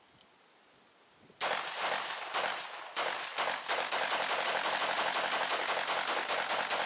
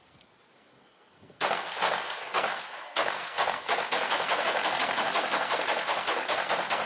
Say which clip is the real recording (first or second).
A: first